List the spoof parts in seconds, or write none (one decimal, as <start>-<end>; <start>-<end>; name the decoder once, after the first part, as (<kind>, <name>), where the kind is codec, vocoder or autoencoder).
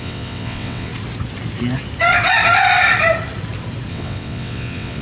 0.0-0.9 (vocoder, WaveNeXt); 3.9-5.0